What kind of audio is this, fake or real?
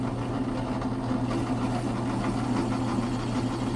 real